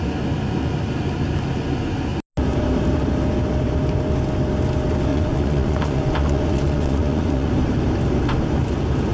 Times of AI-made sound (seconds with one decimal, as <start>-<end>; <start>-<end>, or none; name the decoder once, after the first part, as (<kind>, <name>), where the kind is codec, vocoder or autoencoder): 5.1-7.5 (vocoder, Vocos)

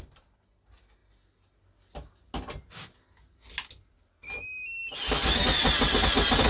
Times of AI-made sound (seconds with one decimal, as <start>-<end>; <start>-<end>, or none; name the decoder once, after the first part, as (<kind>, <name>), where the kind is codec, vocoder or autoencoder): none

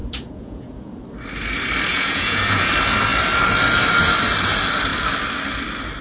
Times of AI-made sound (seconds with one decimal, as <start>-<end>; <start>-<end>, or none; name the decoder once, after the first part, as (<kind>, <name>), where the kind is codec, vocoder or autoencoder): 0.0-1.0 (vocoder, Vocos); 1.9-2.7

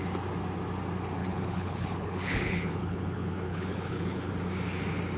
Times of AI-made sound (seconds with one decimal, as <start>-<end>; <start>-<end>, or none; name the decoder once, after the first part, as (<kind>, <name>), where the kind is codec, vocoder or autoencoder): 1.2-4.3 (codec, HILCodec)